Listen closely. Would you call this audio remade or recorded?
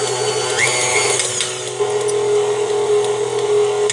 recorded